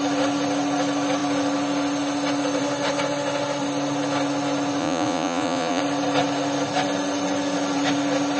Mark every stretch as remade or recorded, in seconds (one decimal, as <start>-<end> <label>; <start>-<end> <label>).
0.0-4.8 recorded; 4.8-5.8 remade; 5.8-8.4 recorded